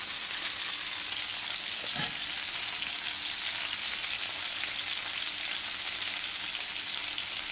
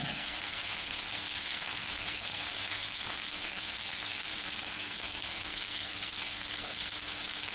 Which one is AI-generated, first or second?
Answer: second